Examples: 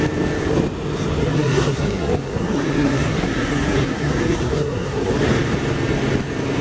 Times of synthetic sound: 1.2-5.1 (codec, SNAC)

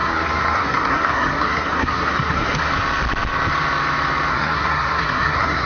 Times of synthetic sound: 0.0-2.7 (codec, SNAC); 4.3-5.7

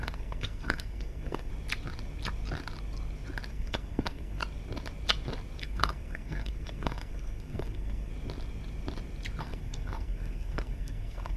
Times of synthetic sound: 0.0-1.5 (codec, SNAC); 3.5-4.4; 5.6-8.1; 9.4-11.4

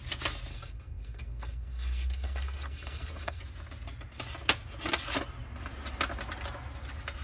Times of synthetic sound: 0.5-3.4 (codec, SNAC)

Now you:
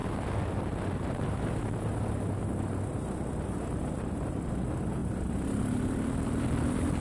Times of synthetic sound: none